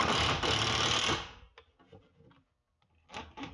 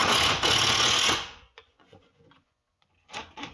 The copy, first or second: second